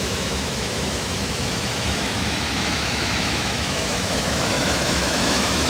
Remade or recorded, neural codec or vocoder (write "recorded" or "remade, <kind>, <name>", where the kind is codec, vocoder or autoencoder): remade, autoencoder, DAC-VAE